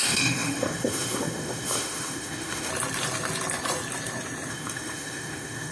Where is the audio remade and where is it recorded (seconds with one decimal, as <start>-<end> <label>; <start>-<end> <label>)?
0.0-2.7 remade; 2.7-4.5 recorded; 4.5-5.7 remade